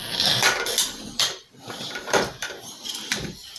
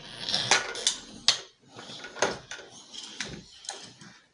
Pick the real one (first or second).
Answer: second